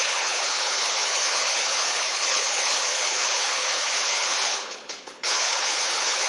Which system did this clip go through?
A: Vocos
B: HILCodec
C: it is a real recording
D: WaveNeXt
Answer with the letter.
B